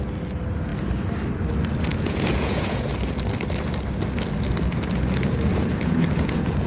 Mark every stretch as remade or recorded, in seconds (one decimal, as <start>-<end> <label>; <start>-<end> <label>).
0.0-1.9 recorded; 1.9-2.9 remade; 2.9-5.5 recorded; 5.5-6.7 remade